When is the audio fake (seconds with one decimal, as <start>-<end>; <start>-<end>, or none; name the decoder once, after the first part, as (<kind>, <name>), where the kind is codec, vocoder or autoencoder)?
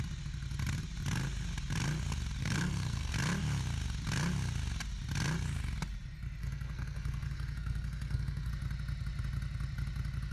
2.4-3.1 (codec, SNAC); 6.4-8.5